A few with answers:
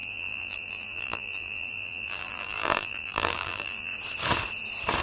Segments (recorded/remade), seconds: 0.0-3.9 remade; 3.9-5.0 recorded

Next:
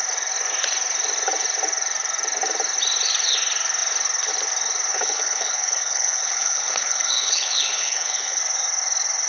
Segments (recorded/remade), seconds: 0.0-4.9 recorded; 4.9-8.4 remade; 8.4-9.3 recorded

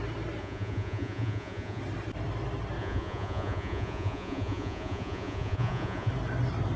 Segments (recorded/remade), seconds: 0.0-0.4 recorded; 0.4-1.8 remade; 1.8-2.8 recorded; 2.8-6.1 remade; 6.1-6.8 recorded

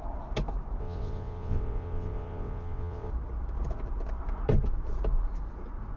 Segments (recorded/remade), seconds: 0.0-0.8 recorded; 0.8-3.1 remade; 3.1-6.0 recorded

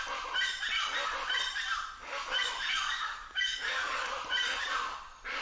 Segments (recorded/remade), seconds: 0.0-2.0 recorded; 2.0-4.1 remade; 4.1-5.4 recorded

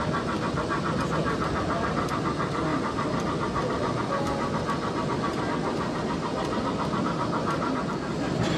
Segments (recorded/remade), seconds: 0.0-8.6 recorded

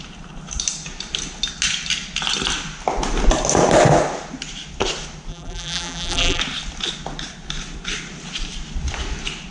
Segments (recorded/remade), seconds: 0.0-5.3 recorded; 5.3-6.4 remade; 6.4-9.5 recorded